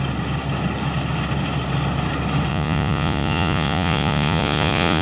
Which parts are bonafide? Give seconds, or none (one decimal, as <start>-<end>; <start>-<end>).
0.0-2.5